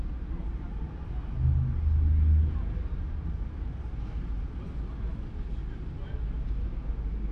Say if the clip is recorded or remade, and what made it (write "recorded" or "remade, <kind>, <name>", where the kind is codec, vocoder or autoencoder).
recorded